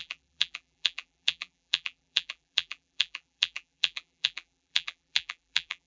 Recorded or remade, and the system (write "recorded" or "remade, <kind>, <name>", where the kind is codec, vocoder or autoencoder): remade, vocoder, BigVGAN v2